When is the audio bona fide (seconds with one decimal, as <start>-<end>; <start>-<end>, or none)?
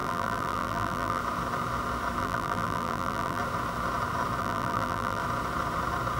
1.2-2.2; 3.4-4.4; 5.2-6.2